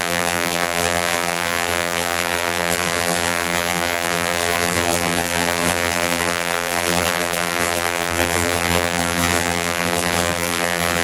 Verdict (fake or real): fake